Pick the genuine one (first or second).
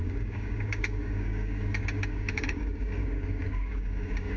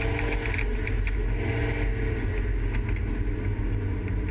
second